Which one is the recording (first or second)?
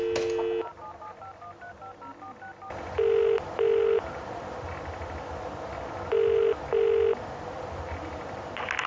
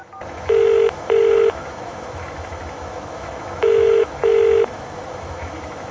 first